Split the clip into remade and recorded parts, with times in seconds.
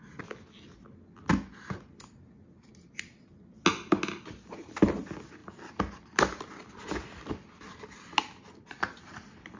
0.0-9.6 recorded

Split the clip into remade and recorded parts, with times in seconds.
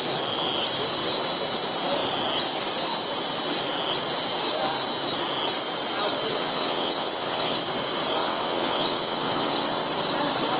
0.0-6.3 recorded; 6.3-7.6 remade; 7.6-8.2 recorded; 8.2-9.8 remade; 9.8-10.6 recorded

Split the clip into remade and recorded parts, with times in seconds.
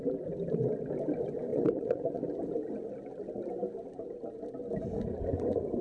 0.0-1.5 recorded; 1.5-2.2 remade; 2.2-5.8 recorded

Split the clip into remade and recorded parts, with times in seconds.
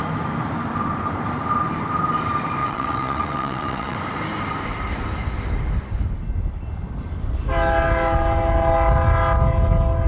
0.0-2.6 recorded; 2.6-4.0 remade; 4.0-10.1 recorded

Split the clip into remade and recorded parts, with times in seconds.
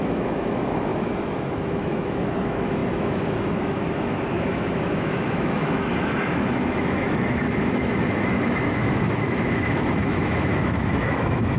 0.0-11.6 remade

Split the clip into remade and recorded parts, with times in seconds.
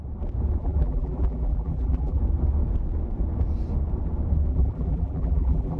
0.0-0.6 recorded; 0.6-2.2 remade; 2.2-4.5 recorded; 4.5-5.8 remade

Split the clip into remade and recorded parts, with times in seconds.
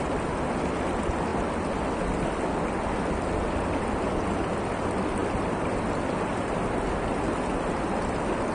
0.0-8.5 recorded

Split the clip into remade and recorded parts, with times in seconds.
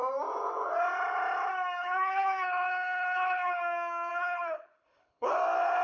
0.0-1.8 recorded; 1.8-3.6 remade; 3.6-4.1 recorded; 4.1-5.3 remade; 5.3-5.8 recorded